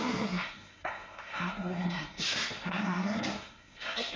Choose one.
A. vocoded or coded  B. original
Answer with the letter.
A